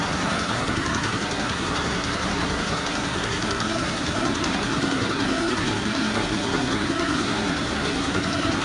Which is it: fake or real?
fake